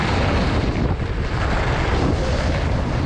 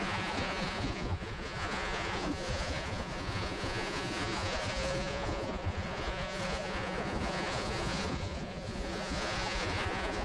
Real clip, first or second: first